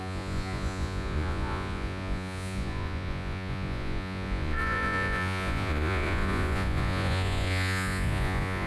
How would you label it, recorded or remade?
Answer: remade